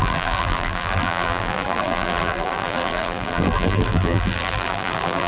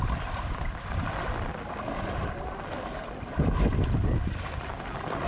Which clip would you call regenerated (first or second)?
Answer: first